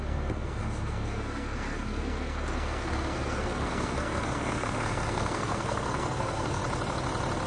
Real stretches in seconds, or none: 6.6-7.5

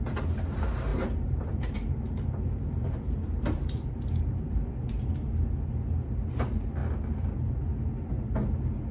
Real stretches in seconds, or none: 0.0-0.9; 5.1-8.9

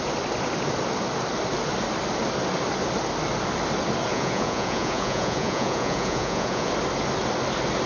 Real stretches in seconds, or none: 0.0-4.1; 6.7-7.9

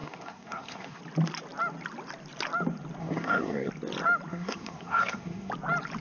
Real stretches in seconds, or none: 1.0-3.0; 3.7-4.3; 5.5-6.0

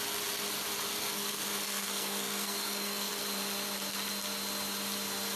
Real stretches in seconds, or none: 0.0-0.9; 3.1-5.4

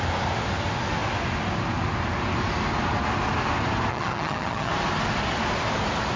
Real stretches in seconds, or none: 0.0-3.9; 4.7-6.2

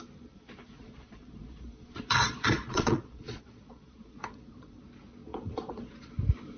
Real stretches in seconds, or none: 0.0-0.8; 4.8-5.3; 6.1-6.6